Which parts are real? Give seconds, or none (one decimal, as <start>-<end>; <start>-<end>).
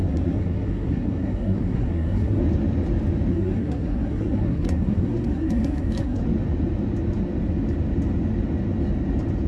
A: 2.4-3.3; 6.2-9.5